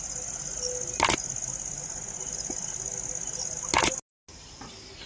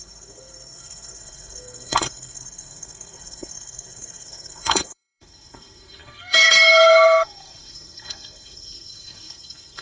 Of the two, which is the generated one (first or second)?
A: second